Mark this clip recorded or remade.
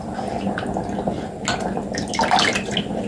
recorded